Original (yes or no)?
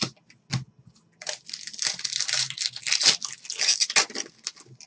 yes